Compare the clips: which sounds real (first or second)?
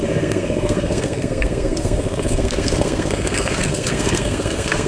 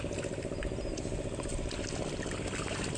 second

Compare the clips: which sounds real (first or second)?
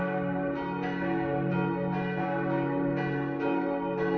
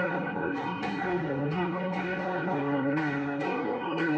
first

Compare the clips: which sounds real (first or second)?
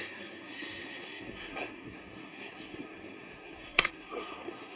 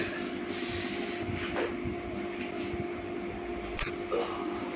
second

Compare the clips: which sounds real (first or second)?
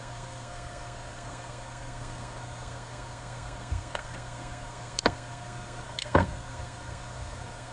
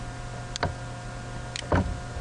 second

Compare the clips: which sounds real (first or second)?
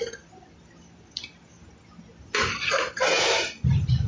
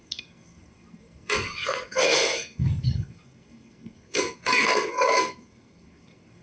first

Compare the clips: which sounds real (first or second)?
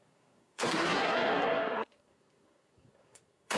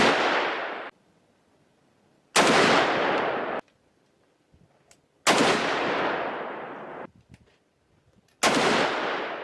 second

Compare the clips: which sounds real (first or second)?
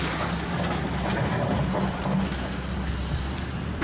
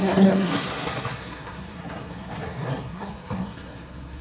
first